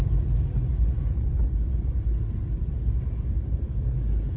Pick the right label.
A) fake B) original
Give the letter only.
B